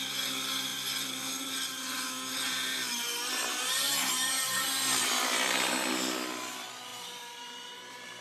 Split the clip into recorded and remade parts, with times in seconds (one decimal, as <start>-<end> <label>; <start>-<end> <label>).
0.0-0.7 recorded; 0.7-1.3 remade; 1.3-3.5 recorded; 3.5-5.9 remade; 5.9-6.9 recorded; 6.9-8.2 remade